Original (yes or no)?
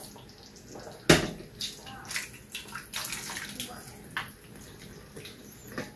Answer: yes